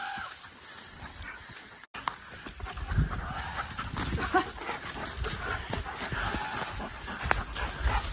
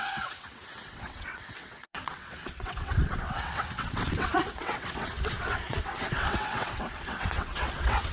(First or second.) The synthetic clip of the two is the second